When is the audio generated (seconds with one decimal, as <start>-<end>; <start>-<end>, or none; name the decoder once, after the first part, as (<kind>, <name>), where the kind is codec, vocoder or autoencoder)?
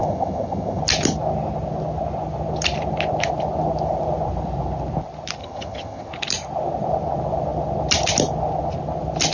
0.0-0.8 (vocoder, HiFi-GAN); 5.4-6.1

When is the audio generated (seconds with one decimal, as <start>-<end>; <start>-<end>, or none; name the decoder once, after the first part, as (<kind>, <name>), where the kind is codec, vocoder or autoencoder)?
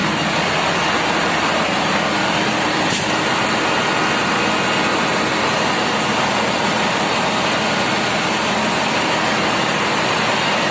2.3-4.0 (vocoder, BigVGAN v2); 8.7-10.7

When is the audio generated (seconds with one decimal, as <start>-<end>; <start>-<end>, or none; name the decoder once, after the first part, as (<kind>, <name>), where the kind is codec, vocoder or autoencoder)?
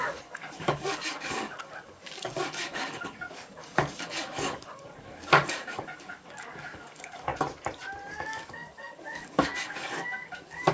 0.0-7.3 (codec, DAC); 8.1-10.7